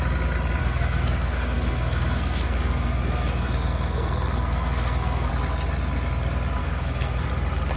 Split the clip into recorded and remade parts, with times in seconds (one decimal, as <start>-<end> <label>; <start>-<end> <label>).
0.0-0.6 recorded; 0.6-5.3 remade; 5.3-6.6 recorded; 6.6-7.3 remade; 7.3-7.8 recorded